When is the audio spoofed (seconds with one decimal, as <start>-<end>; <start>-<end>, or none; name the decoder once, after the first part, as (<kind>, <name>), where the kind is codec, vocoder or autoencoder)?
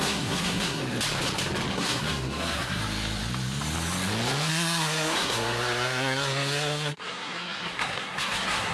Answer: 0.0-0.8 (codec, SNAC); 1.7-2.8; 4.5-8.7